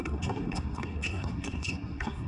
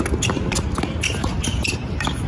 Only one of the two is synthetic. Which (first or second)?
first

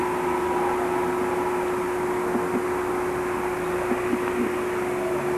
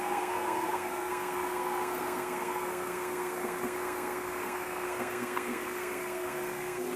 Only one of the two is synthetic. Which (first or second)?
second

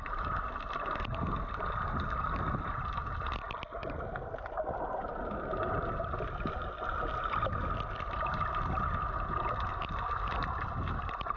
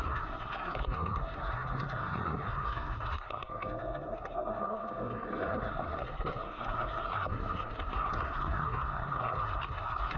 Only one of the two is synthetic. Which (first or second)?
second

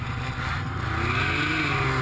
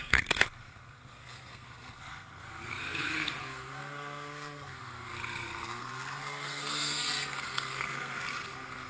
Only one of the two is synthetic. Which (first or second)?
second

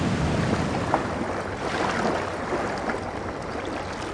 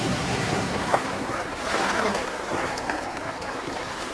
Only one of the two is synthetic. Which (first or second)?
second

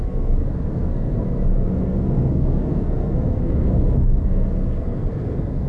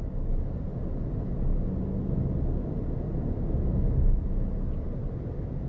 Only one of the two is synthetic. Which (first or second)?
first